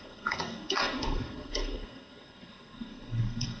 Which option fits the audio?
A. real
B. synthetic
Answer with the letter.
B